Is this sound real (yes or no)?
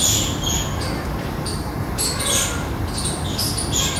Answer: yes